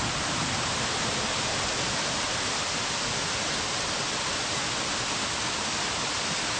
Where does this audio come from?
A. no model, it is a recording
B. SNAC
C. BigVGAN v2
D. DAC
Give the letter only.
C